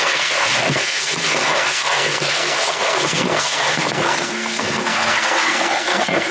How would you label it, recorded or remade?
remade